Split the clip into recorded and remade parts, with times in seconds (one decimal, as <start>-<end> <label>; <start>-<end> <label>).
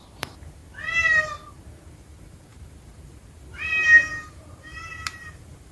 0.0-0.6 remade; 0.6-1.5 recorded; 1.5-5.7 remade